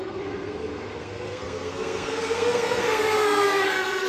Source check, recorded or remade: remade